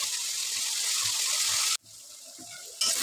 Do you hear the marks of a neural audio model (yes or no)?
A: no